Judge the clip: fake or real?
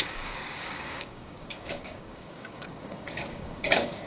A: fake